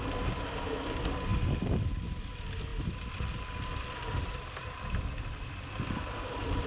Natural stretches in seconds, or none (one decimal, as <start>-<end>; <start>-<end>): 0.0-1.3; 2.2-2.7